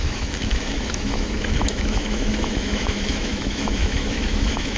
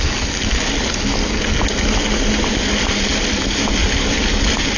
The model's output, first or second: first